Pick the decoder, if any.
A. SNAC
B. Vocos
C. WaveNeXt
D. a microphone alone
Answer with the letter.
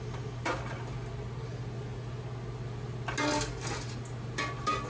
D